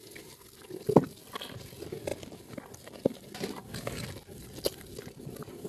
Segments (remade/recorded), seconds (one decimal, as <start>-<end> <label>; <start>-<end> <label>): 0.0-5.7 recorded